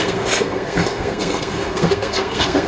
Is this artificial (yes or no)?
yes